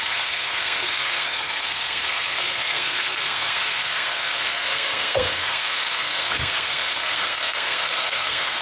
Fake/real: fake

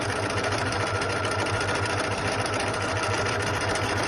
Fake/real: real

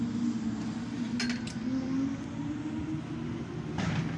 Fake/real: real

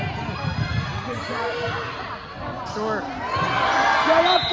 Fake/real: real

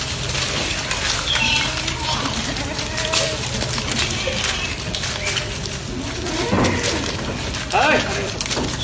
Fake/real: real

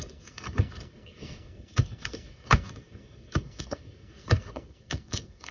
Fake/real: fake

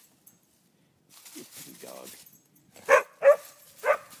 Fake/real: real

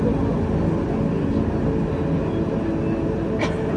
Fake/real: real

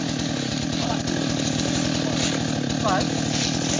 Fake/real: real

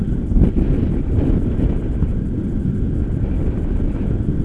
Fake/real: real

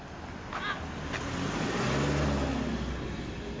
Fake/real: real